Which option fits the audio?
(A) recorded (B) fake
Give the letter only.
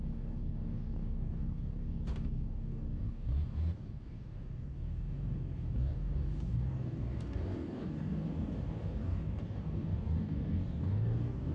B